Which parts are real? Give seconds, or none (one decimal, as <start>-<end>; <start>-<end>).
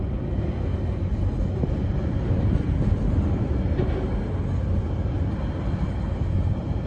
0.0-6.9